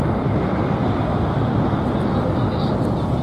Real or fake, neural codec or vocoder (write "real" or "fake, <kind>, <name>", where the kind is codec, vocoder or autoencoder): real